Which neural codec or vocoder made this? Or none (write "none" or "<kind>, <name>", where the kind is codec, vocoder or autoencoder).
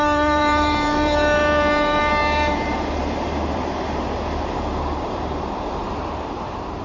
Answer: vocoder, BigVGAN v2